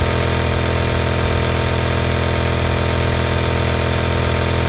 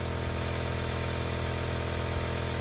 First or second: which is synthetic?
second